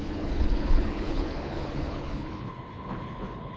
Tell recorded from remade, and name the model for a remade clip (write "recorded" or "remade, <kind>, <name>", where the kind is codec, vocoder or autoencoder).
remade, codec, HILCodec